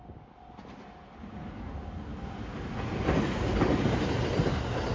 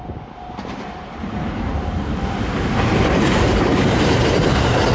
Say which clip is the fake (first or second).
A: second